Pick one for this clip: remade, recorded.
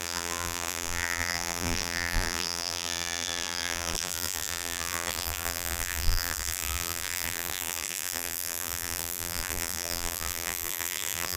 remade